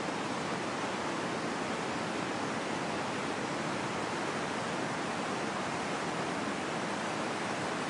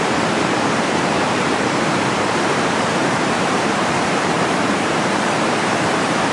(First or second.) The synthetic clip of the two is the second